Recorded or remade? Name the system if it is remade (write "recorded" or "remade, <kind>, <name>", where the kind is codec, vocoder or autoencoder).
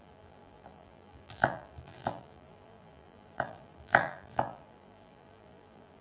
remade, vocoder, BigVGAN v2